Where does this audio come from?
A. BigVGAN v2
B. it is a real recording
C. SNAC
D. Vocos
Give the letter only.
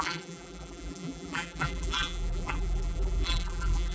A